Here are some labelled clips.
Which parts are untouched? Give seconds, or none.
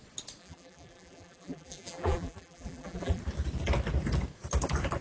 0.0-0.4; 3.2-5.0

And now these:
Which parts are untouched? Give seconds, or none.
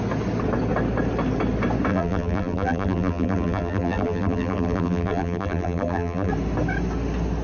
0.0-1.9; 6.3-7.4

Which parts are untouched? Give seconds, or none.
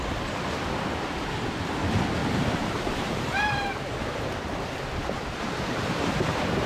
0.0-2.2; 6.2-6.7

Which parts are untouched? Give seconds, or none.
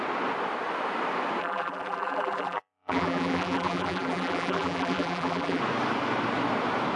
0.0-1.4; 5.6-7.0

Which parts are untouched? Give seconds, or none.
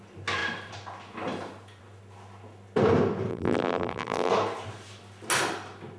0.0-3.3; 4.3-6.0